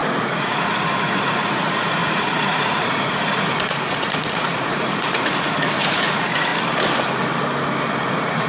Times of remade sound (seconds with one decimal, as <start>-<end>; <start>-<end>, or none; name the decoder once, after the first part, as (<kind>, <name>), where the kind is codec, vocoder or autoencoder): 0.0-6.5 (vocoder, Vocos); 8.1-8.5